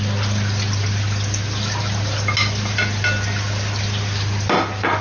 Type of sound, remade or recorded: recorded